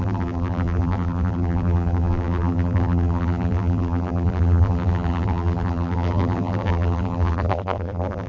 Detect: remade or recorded remade